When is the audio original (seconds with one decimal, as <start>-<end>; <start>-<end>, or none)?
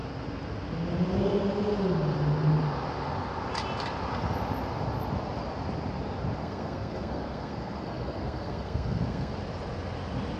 0.0-6.4; 9.3-10.4